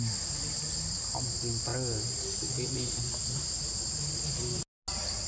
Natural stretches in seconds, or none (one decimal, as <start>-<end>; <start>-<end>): 0.0-5.3